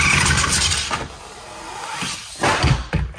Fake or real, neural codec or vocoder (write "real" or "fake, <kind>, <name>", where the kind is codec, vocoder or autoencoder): real